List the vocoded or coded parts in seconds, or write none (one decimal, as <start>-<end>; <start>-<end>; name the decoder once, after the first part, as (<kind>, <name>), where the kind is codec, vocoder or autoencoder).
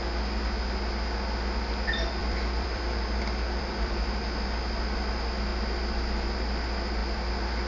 2.2-3.9 (vocoder, BigVGAN v2)